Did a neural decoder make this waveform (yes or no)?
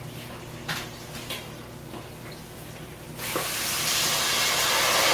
no